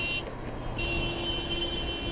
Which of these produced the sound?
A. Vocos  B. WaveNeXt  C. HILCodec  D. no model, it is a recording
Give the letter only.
D